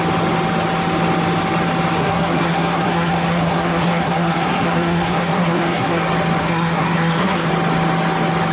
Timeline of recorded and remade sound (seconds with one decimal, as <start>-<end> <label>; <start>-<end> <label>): 0.0-2.0 recorded; 2.0-6.0 remade; 6.0-6.4 recorded; 6.4-7.5 remade; 7.5-8.5 recorded